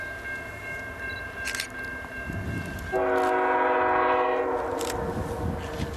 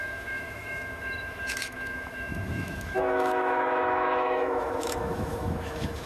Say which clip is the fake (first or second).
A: second